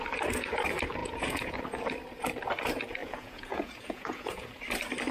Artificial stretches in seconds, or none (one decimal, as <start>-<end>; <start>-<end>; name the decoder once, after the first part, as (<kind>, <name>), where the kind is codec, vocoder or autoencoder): 1.0-1.6 (vocoder, Vocos); 3.0-4.5